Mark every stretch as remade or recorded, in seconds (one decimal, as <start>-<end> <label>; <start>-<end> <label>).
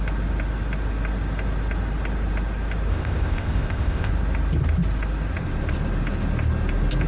0.0-2.9 recorded; 2.9-4.1 remade; 4.1-7.1 recorded